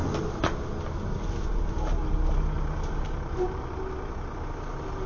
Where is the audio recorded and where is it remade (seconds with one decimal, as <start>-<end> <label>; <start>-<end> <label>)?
0.0-5.1 recorded